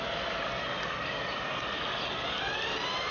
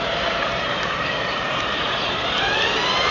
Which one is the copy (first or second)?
second